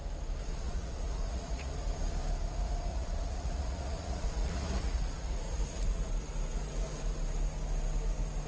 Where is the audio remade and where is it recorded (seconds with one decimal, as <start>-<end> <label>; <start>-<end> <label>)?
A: 0.0-0.4 recorded; 0.4-1.7 remade; 1.7-2.9 recorded; 2.9-6.1 remade; 6.1-8.5 recorded